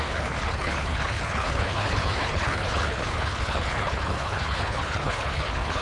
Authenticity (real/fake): fake